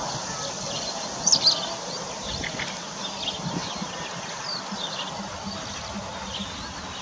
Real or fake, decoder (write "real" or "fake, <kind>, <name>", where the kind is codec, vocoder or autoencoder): real